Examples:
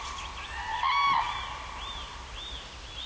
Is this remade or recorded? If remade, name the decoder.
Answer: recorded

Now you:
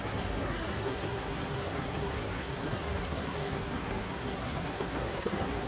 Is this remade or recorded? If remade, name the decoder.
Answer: remade, codec, SNAC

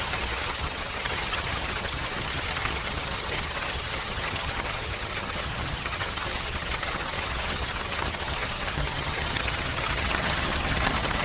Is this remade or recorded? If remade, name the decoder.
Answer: remade, vocoder, HiFi-GAN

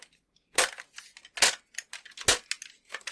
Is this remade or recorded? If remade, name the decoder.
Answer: recorded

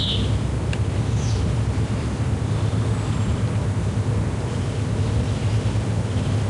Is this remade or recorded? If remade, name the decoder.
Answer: recorded